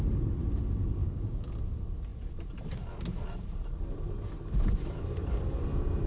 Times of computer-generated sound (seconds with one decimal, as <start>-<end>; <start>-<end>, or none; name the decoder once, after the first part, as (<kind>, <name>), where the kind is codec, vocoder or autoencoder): 1.0-1.5 (codec, DAC)